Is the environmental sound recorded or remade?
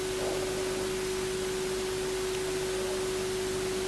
recorded